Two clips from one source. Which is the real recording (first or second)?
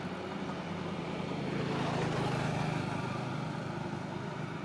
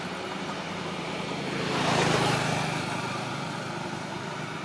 first